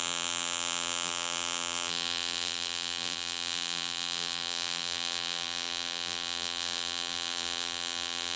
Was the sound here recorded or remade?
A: remade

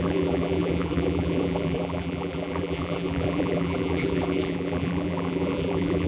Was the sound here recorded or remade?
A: remade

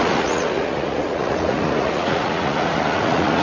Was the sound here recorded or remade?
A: remade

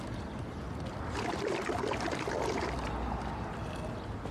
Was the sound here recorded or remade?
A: recorded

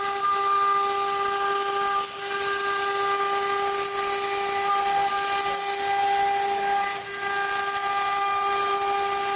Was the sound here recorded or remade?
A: recorded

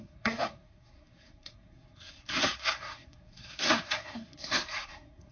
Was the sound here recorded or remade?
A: remade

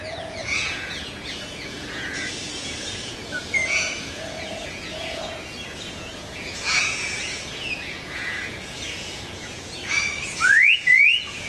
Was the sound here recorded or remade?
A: remade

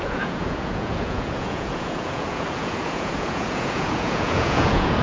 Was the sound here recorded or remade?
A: remade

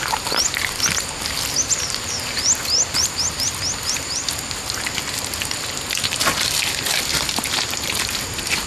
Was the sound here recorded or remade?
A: recorded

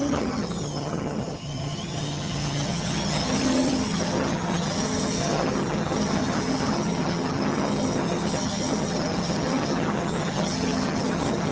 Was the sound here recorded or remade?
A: remade